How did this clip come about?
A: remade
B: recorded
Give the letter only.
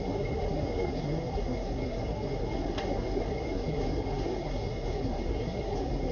A